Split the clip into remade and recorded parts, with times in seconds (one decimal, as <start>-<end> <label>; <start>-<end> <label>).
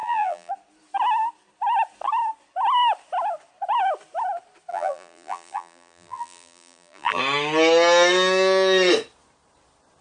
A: 0.0-0.5 remade; 0.5-4.7 recorded; 4.7-7.2 remade; 7.2-10.0 recorded